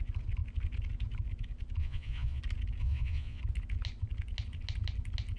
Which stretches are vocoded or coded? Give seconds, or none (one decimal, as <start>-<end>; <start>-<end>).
1.8-2.4; 2.8-3.4